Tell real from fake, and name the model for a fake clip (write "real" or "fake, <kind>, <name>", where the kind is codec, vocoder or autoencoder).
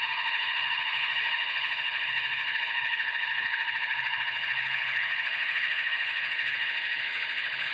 fake, codec, HILCodec